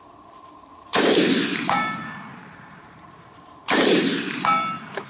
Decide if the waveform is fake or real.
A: fake